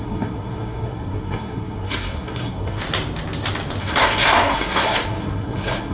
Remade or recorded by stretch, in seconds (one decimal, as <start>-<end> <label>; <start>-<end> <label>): 0.0-2.8 remade; 2.8-3.8 recorded; 3.8-5.9 remade